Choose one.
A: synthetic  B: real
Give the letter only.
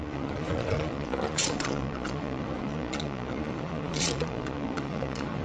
A